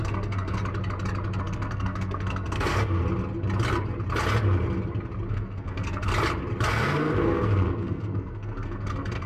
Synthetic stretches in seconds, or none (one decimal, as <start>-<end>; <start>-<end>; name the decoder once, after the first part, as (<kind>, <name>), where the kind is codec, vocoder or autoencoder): 0.0-0.6 (codec, SNAC); 1.4-3.0; 5.3-6.1; 6.7-9.3